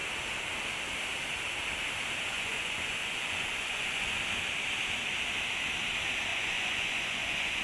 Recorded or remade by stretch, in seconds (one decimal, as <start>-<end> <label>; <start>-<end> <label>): 0.0-2.3 recorded; 2.3-4.2 remade; 4.2-6.3 recorded; 6.3-7.6 remade